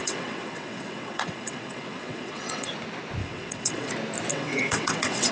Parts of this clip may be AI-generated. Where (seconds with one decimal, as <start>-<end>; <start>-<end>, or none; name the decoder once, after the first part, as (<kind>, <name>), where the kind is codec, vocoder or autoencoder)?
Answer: 0.0-2.7 (vocoder, WaveNeXt); 3.2-3.9; 4.3-5.3